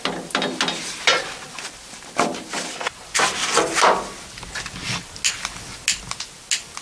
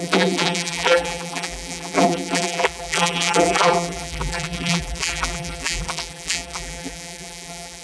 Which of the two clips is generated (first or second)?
second